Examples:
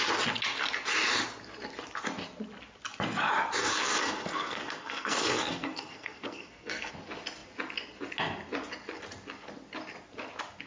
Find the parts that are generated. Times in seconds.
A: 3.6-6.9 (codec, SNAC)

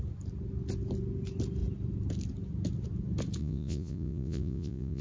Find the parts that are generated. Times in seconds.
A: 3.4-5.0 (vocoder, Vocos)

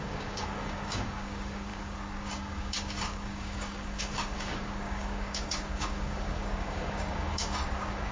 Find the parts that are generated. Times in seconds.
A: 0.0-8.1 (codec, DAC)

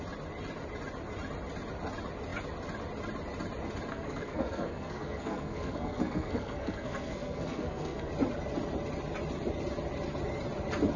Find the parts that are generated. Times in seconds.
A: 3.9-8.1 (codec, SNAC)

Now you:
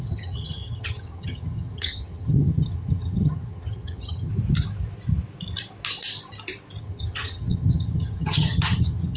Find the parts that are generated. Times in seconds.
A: 0.0-4.3 (vocoder, HiFi-GAN); 6.8-9.2